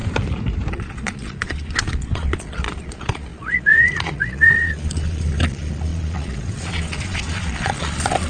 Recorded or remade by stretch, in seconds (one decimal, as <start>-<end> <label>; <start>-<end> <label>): 0.0-0.7 recorded; 0.7-8.3 remade